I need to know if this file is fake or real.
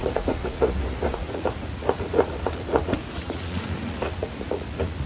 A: fake